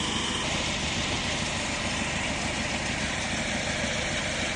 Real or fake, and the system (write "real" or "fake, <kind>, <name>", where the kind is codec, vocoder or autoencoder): real